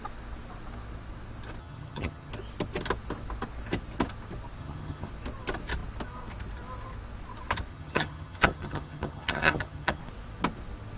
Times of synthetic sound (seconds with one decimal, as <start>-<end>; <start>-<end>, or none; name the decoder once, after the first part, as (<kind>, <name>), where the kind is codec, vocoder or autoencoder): 1.6-2.3 (vocoder, HiFi-GAN); 4.6-5.1; 7.7-10.0